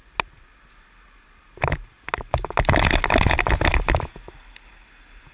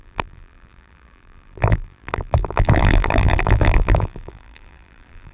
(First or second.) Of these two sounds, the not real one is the second